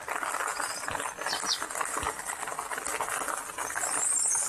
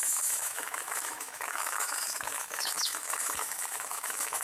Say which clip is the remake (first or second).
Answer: second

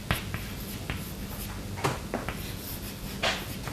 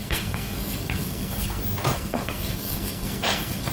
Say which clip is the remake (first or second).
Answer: second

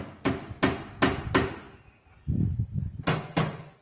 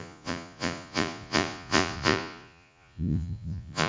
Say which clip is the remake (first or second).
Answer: second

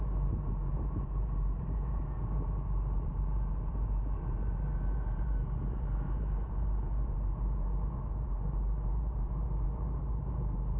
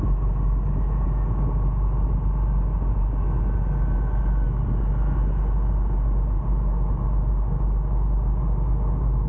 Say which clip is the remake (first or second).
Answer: first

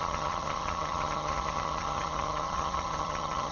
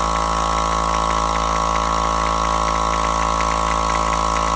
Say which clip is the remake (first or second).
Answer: first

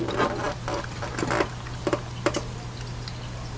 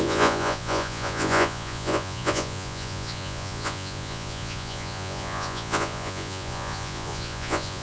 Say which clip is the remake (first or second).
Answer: second